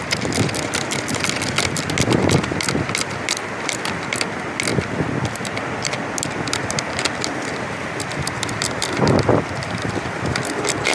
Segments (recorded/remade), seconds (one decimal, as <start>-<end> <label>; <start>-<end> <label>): 0.0-10.9 recorded